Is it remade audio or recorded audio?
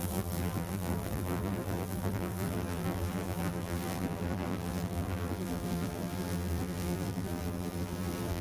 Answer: remade